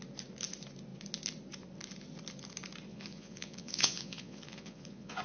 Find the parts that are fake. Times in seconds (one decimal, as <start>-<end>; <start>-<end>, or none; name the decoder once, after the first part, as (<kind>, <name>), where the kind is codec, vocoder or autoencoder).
2.9-5.2 (vocoder, Vocos)